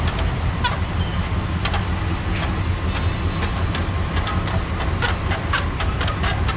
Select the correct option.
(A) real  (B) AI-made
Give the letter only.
A